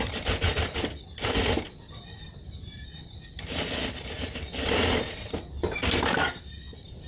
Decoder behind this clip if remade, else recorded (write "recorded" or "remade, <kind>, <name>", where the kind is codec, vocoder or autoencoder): recorded